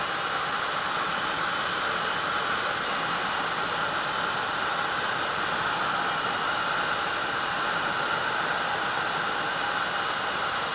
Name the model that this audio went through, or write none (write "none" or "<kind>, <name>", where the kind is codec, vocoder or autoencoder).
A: none